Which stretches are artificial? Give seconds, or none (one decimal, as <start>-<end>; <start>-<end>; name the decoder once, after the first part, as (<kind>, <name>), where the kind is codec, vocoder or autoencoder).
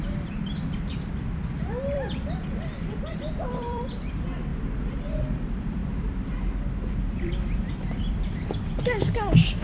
0.0-4.5 (vocoder, BigVGAN v2); 5.2-9.6